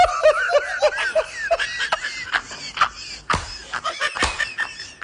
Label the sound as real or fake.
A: real